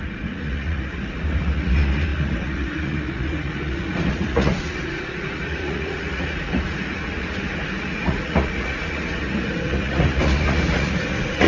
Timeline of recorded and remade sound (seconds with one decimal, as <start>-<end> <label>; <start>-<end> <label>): 0.0-11.5 remade